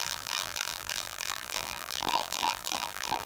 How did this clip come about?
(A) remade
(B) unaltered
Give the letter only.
A